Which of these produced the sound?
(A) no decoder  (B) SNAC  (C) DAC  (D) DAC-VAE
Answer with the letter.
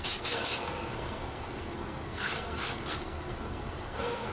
B